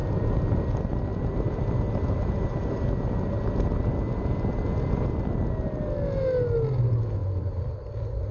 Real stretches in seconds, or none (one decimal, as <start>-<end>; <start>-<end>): 0.0-8.3